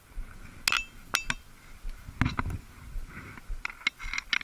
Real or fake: real